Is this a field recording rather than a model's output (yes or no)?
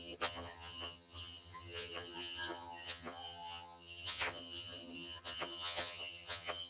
no